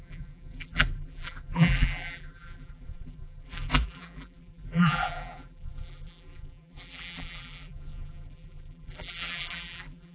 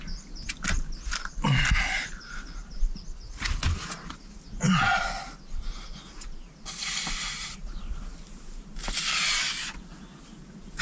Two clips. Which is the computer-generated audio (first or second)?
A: first